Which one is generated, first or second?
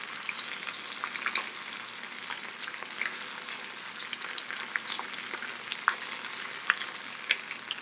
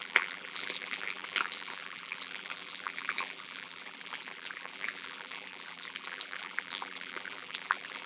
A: second